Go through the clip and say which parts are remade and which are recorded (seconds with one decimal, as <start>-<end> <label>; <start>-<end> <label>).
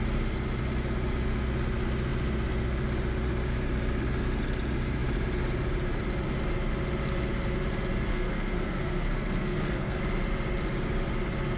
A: 0.0-8.1 recorded; 8.1-10.0 remade; 10.0-11.6 recorded